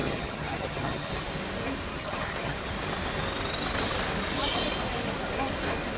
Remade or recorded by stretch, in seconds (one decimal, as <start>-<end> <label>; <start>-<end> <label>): 0.0-1.1 remade; 1.1-1.9 recorded; 1.9-2.7 remade; 2.7-6.0 recorded